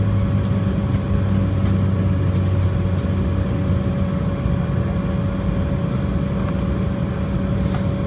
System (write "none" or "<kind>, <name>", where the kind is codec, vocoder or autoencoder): none